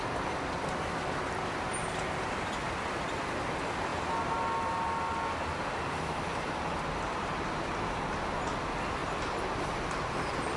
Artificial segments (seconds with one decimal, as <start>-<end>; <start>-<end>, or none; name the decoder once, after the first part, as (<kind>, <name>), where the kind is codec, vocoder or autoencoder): 9.0-9.8 (vocoder, BigVGAN v2)

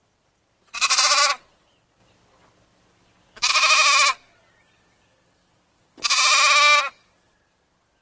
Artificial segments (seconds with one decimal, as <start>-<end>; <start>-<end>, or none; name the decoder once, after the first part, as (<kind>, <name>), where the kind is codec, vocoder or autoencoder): 0.0-1.0 (vocoder, BigVGAN v2)

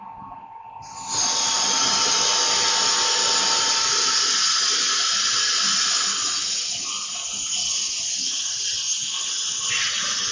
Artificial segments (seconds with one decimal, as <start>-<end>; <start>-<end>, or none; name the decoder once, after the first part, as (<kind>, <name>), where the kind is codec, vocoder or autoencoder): none